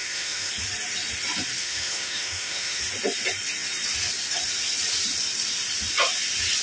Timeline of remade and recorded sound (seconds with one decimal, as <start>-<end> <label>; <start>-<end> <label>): 0.0-0.5 remade; 0.5-1.6 recorded; 1.6-2.8 remade; 2.8-6.6 recorded

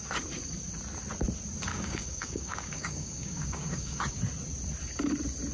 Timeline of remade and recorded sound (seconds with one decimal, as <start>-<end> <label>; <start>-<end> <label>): 0.0-1.7 recorded; 1.7-4.2 remade; 4.2-5.5 recorded